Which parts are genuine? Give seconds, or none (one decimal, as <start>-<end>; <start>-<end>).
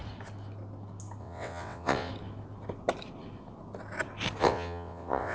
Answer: 0.0-1.2; 2.1-4.4